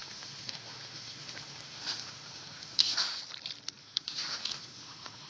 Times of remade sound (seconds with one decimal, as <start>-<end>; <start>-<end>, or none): 0.0-3.2; 3.8-5.3